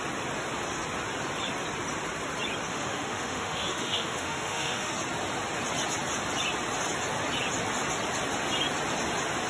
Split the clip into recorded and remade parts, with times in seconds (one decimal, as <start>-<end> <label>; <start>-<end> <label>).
0.0-2.7 recorded; 2.7-4.9 remade; 4.9-9.5 recorded